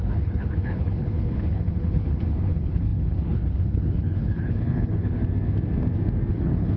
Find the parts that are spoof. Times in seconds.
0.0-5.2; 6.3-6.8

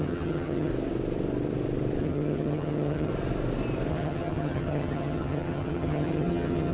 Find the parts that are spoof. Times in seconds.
0.0-0.7; 2.0-3.1; 3.9-6.7

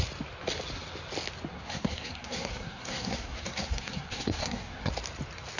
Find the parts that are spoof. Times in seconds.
1.5-4.9

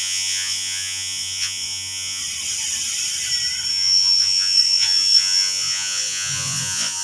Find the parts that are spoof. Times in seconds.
0.0-2.2; 3.7-7.0

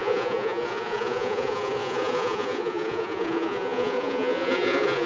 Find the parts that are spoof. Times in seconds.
0.0-5.1